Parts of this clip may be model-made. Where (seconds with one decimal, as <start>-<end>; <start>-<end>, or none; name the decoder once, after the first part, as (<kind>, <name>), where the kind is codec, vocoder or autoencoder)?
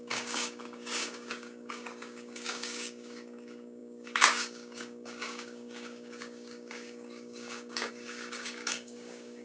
0.0-9.4 (codec, DAC)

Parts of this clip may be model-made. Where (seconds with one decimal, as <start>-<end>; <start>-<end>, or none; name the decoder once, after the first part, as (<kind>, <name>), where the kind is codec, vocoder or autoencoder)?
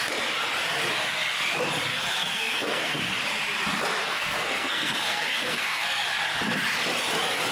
1.9-3.0 (codec, SNAC); 4.0-6.0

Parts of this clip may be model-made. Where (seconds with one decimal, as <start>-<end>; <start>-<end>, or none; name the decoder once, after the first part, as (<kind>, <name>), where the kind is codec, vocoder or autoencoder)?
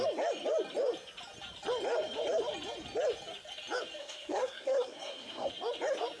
4.0-5.5 (codec, SNAC)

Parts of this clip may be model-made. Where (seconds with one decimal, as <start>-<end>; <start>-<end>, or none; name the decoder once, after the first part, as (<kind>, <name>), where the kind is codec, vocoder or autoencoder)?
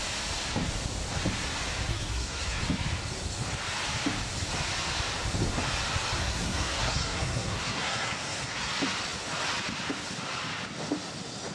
1.9-2.6 (codec, SNAC); 6.2-8.7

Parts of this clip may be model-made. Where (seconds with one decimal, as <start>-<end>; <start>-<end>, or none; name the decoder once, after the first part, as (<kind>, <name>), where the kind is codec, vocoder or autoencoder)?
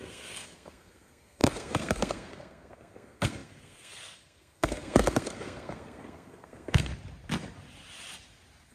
0.0-6.9 (codec, SNAC)